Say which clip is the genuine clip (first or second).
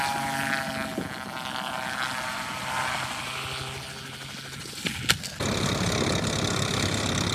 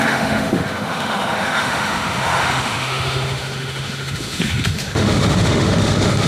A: first